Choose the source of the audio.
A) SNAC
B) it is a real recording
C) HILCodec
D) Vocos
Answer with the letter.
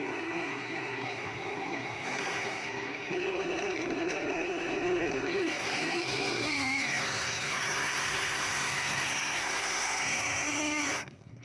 A